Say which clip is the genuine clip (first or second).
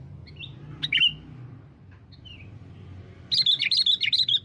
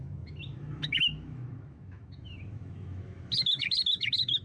first